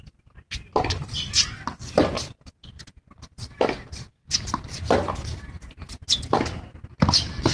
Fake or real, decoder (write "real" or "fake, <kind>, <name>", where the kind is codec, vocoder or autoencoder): real